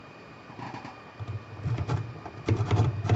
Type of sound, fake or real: fake